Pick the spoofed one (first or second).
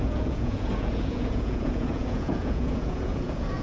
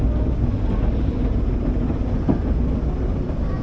first